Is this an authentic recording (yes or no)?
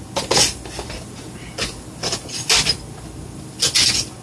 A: yes